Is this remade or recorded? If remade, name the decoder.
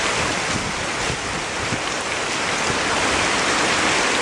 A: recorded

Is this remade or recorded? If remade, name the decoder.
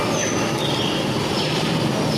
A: recorded